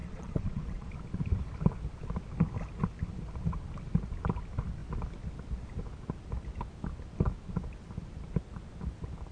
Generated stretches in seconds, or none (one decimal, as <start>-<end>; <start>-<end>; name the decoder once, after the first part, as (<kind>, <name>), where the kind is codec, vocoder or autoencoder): 0.0-0.9 (vocoder, Vocos)